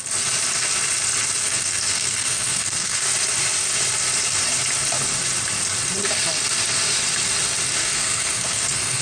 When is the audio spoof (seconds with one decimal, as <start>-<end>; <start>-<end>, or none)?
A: 1.4-3.0; 7.8-9.0